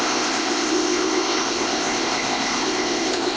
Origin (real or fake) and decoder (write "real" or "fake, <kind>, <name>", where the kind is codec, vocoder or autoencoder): fake, codec, ZipCodec